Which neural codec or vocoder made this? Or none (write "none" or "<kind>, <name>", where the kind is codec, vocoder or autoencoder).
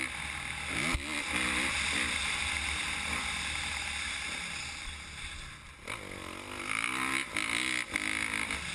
none